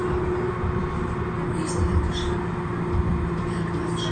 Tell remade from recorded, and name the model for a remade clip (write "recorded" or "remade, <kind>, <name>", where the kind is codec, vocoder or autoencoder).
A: recorded